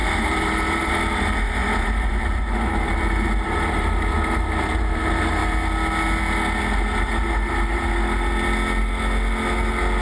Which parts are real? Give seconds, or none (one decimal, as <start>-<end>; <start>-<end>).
5.4-10.0

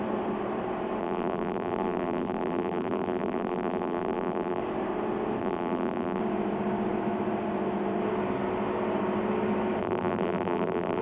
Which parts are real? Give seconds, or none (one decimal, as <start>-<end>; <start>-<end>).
0.0-1.0; 4.6-5.4; 6.2-9.8

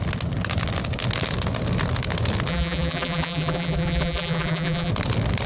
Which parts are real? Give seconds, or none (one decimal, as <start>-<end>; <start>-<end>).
0.0-2.5; 4.9-5.5

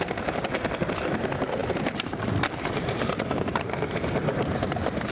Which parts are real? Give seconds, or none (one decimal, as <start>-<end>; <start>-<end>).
0.0-1.6

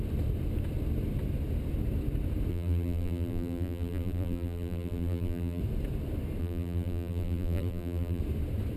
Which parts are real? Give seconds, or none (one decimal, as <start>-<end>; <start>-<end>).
0.0-2.5; 5.6-6.4; 8.2-8.8

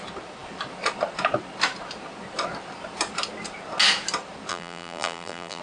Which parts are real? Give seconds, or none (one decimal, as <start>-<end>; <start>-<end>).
0.0-4.5

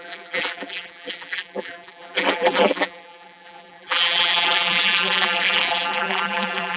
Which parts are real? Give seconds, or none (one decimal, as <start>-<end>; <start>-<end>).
none

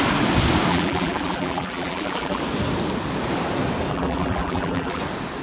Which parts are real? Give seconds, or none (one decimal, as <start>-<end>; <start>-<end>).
0.0-0.7; 2.4-3.9; 5.0-5.4